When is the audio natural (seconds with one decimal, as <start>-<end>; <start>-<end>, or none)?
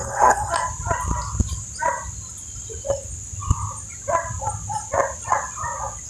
0.5-6.1